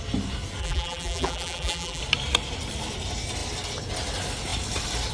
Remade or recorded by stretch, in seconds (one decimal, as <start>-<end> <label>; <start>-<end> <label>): 0.0-0.6 recorded; 0.6-2.0 remade; 2.0-5.1 recorded